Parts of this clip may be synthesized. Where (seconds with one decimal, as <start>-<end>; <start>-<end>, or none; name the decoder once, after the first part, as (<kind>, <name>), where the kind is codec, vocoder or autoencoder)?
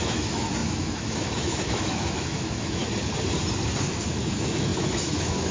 0.0-2.8 (autoencoder, DAC-VAE); 3.9-5.5